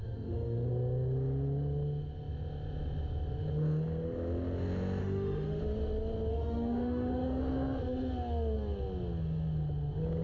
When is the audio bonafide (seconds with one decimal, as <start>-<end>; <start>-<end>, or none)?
0.7-5.0; 5.6-6.3; 7.4-10.2

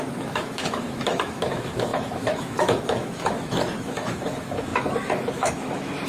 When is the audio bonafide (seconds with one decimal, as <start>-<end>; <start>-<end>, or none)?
none

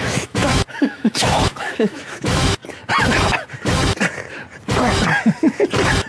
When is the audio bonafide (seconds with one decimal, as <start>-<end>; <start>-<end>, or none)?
2.6-6.1

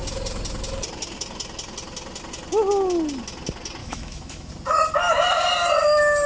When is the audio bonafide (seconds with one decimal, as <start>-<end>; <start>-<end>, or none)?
0.0-3.8; 4.5-6.3

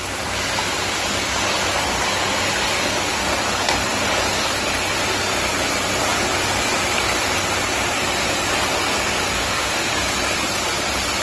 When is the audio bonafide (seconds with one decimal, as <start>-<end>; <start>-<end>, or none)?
0.0-9.4; 9.9-11.2

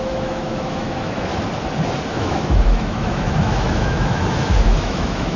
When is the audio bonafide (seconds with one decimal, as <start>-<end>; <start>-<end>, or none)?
1.3-2.1

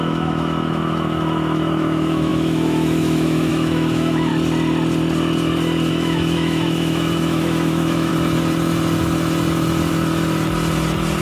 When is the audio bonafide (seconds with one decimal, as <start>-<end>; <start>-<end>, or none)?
4.3-5.9; 8.1-11.2

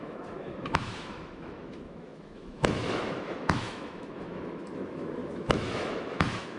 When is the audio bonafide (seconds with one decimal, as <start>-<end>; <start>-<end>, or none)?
none